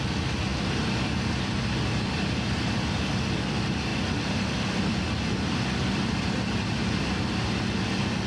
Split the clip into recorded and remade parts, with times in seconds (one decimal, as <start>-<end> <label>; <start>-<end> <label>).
0.0-8.3 recorded